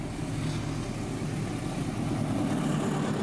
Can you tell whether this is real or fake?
real